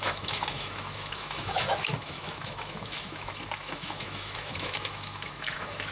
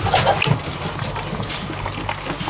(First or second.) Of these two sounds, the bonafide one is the second